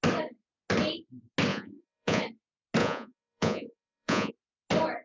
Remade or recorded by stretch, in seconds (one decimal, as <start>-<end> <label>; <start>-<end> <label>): 0.0-1.5 recorded; 1.5-2.2 remade; 2.2-2.8 recorded; 2.8-4.3 remade; 4.3-5.0 recorded